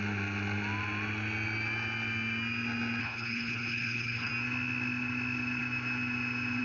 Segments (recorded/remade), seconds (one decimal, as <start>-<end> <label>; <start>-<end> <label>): 0.0-3.0 recorded; 3.0-4.3 remade; 4.3-6.6 recorded